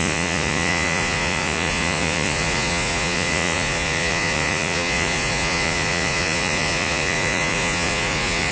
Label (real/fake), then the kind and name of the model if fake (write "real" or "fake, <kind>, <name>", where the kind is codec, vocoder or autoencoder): fake, vocoder, Vocos